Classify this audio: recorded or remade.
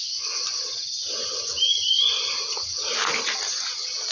recorded